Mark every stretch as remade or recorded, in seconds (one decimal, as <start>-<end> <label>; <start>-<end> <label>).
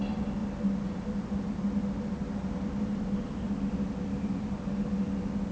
0.0-5.5 recorded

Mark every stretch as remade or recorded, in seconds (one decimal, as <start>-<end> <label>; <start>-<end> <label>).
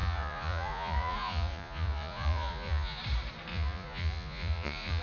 0.0-3.0 remade; 3.0-3.5 recorded; 3.5-5.0 remade